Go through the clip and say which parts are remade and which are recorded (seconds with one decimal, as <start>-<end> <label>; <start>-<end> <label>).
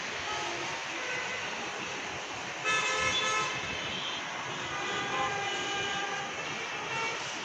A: 0.0-7.4 recorded